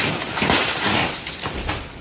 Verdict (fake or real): fake